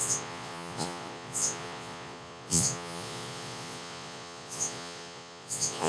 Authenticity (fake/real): fake